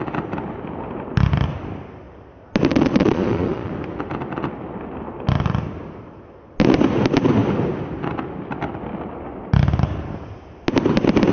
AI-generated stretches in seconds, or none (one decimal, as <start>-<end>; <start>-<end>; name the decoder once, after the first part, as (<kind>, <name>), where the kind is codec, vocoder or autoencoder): 2.7-3.7 (vocoder, Vocos)